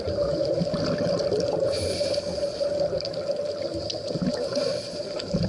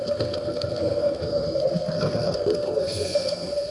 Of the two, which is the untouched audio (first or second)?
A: first